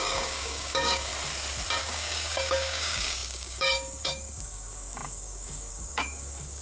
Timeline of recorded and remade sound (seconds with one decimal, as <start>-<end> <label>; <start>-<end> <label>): 0.0-1.1 remade; 1.1-1.8 recorded; 1.8-6.6 remade